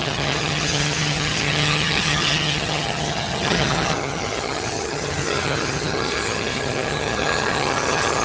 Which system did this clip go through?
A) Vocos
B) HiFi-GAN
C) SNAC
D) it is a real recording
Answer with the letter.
B